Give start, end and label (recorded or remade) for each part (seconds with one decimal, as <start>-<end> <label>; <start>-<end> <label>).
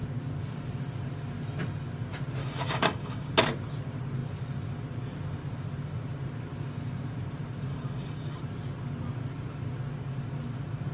0.0-2.4 recorded; 2.4-3.3 remade; 3.3-7.7 recorded; 7.7-8.4 remade; 8.4-10.9 recorded